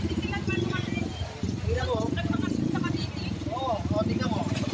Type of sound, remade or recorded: recorded